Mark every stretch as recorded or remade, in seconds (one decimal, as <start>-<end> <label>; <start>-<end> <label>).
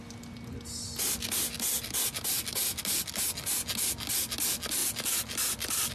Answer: 0.0-4.8 recorded; 4.8-5.9 remade